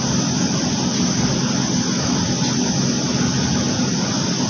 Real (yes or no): yes